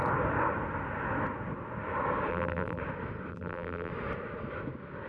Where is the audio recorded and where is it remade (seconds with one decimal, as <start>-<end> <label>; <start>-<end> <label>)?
0.0-2.3 recorded; 2.3-2.8 remade; 2.8-3.3 recorded; 3.3-3.9 remade; 3.9-5.1 recorded